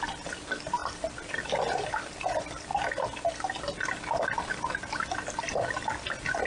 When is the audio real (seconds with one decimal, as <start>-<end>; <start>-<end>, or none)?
0.0-6.5